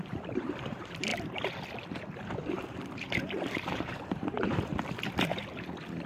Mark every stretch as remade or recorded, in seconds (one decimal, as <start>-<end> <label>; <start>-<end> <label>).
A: 0.0-1.1 remade; 1.1-2.5 recorded; 2.5-4.7 remade; 4.7-6.1 recorded